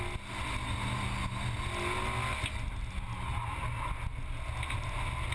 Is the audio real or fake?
real